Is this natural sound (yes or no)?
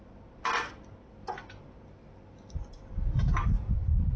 yes